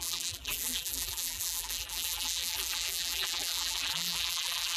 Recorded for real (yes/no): no